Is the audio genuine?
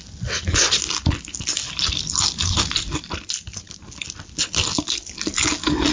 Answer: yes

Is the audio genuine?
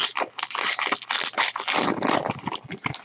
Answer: yes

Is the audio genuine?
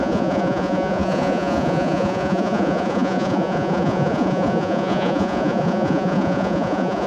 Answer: no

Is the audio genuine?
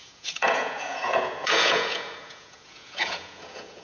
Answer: no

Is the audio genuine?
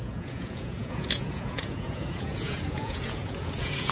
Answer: no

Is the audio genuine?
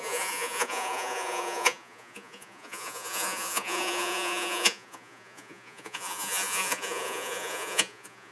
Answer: no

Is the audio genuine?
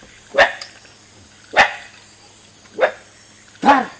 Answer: yes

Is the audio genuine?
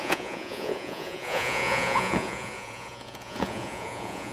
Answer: no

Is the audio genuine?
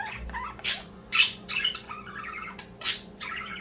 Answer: no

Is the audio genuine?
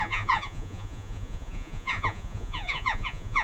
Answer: no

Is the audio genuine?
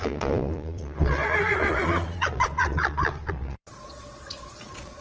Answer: no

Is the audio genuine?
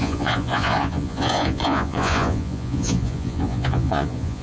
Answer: no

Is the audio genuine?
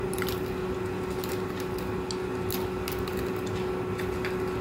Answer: yes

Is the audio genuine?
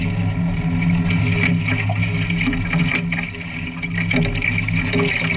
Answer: yes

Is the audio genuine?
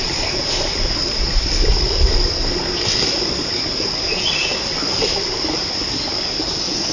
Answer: yes